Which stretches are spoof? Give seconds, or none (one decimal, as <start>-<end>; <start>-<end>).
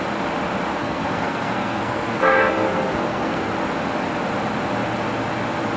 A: 0.8-3.5